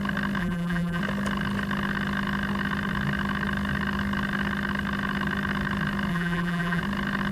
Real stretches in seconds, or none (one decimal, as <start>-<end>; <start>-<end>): 0.0-0.4; 1.0-6.1; 6.8-7.3